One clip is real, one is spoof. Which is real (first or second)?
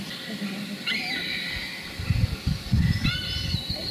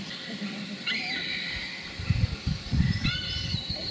first